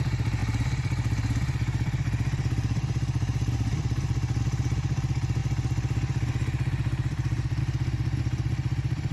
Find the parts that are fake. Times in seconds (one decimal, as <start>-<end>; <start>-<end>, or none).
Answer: 0.0-9.1